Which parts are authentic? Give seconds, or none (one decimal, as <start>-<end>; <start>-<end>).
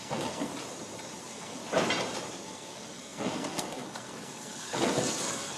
0.5-1.2; 1.6-2.3